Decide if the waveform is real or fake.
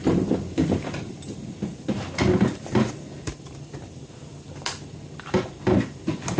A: real